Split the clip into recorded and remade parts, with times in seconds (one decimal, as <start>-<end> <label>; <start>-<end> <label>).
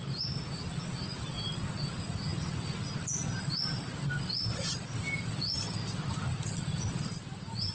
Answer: 0.0-7.7 recorded